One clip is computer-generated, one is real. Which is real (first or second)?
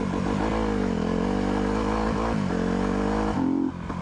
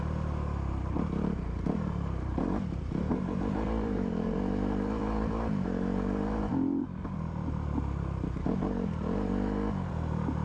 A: first